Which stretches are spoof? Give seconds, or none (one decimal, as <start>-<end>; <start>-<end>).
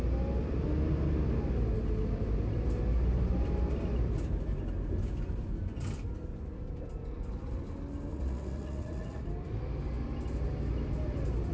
8.1-9.2